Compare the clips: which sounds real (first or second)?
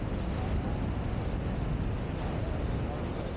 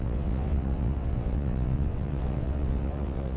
first